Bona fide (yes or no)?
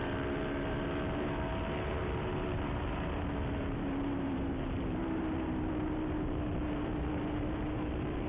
no